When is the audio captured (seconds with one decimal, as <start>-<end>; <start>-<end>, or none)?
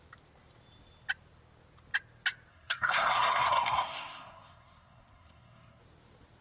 0.0-2.5; 5.8-6.4